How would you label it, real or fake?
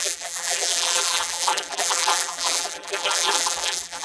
fake